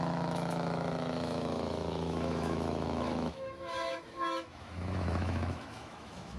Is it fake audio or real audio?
fake